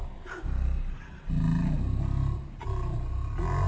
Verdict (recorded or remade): recorded